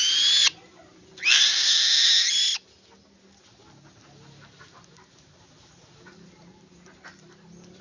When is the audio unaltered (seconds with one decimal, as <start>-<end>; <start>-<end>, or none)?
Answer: 0.0-0.4; 1.7-7.8